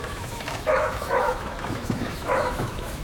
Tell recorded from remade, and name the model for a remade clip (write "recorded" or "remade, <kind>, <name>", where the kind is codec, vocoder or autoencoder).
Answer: remade, autoencoder, DAC-VAE